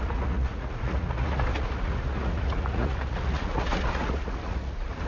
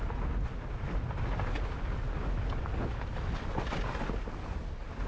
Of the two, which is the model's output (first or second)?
first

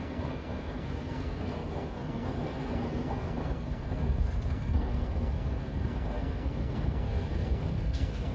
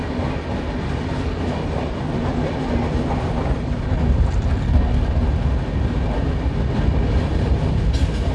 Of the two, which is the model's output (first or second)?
first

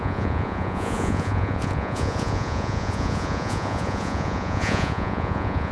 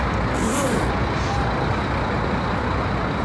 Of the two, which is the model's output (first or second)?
first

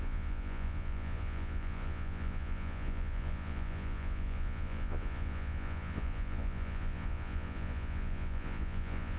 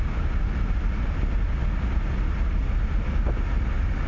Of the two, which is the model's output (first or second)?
first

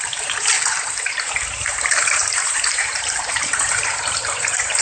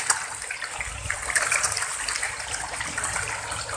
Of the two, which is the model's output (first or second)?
first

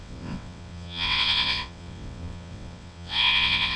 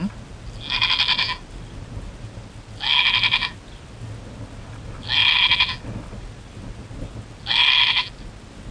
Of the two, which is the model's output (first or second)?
first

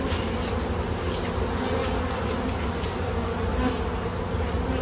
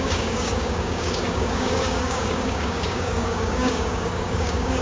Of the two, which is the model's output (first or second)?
second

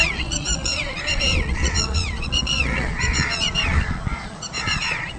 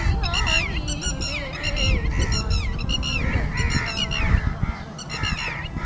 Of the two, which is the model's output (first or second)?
first